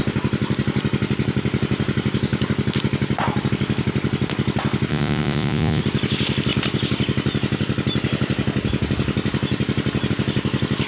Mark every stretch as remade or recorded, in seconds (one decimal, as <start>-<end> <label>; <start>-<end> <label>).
0.0-4.9 recorded; 4.9-5.8 remade; 5.8-10.9 recorded